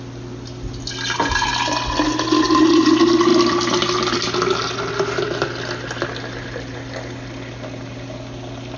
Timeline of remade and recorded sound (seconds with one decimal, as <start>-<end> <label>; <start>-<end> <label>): 0.0-8.8 recorded